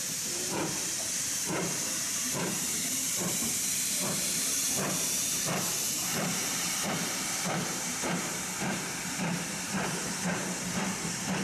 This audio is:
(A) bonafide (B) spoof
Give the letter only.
B